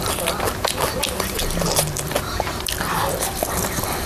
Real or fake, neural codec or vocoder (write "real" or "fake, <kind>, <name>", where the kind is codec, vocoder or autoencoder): real